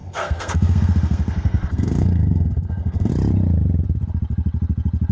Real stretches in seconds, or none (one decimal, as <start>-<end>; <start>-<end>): 3.1-5.1